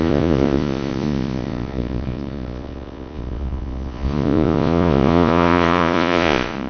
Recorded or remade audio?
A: remade